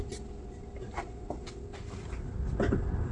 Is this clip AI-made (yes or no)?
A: no